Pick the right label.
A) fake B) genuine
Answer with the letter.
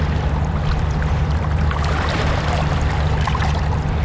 A